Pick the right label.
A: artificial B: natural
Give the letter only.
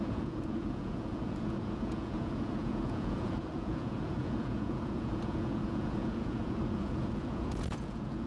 A